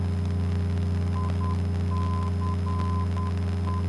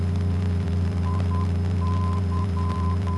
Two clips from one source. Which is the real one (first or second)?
first